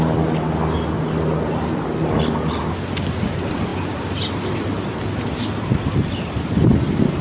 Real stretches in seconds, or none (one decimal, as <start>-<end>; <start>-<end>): 0.0-7.2

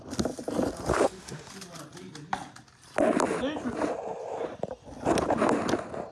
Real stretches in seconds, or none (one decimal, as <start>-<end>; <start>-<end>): 0.0-0.9; 1.5-6.1

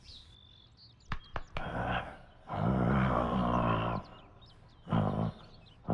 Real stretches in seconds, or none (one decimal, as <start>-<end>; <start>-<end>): 0.0-5.9

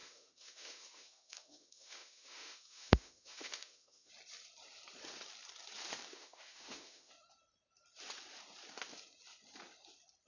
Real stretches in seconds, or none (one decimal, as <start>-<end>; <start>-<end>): 4.1-6.1; 7.1-10.3

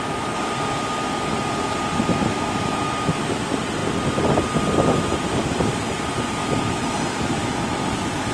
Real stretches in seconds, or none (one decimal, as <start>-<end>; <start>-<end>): 0.0-8.3

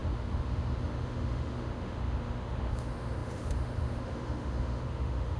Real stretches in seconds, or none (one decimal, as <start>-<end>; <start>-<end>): none